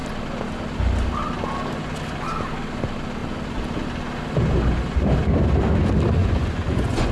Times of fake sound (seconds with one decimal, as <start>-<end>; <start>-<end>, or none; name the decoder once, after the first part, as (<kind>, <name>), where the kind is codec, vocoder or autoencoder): 6.2-7.1 (vocoder, Vocos)